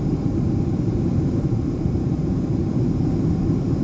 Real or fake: fake